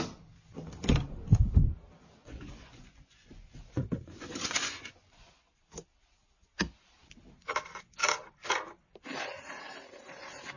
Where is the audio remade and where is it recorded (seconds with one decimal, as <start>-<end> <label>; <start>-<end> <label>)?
0.0-2.2 recorded; 2.2-5.6 remade; 5.6-10.6 recorded